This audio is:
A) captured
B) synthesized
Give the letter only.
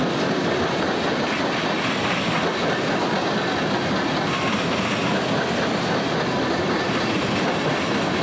A